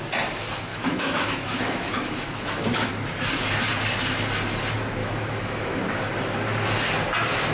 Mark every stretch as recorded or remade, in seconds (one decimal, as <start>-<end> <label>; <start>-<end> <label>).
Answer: 0.0-0.7 recorded; 0.7-2.9 remade; 2.9-5.0 recorded; 5.0-5.8 remade; 5.8-7.5 recorded